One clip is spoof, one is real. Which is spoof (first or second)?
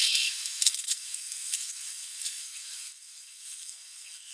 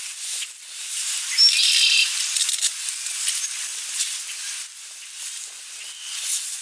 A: first